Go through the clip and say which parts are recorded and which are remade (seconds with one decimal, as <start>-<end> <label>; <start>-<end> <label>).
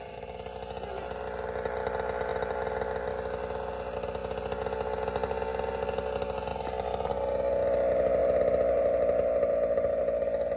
0.0-2.3 recorded; 2.3-3.1 remade; 3.1-6.5 recorded; 6.5-7.1 remade; 7.1-8.2 recorded; 8.2-10.0 remade; 10.0-10.6 recorded